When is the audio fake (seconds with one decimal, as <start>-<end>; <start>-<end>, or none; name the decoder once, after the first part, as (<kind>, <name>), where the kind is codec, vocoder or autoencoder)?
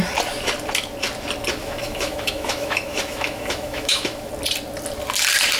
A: 1.6-4.3 (autoencoder, DAC-VAE)